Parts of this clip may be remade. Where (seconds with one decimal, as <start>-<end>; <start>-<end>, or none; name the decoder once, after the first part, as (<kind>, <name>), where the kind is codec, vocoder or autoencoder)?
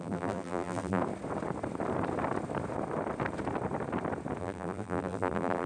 0.0-1.0 (vocoder, BigVGAN v2); 4.4-5.7